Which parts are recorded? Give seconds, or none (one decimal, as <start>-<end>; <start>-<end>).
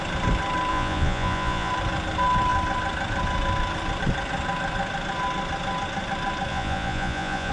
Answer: 0.0-0.7; 1.7-6.5